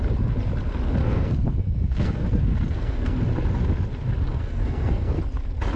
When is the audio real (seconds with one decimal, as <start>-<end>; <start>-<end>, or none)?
0.0-1.0; 3.2-4.3; 5.2-5.8